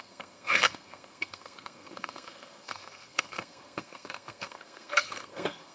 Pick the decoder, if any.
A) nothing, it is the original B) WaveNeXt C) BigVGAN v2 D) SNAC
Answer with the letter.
D